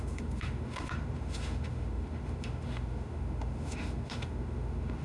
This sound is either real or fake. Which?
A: fake